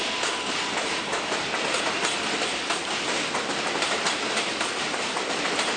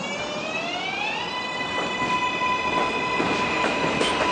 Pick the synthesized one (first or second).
first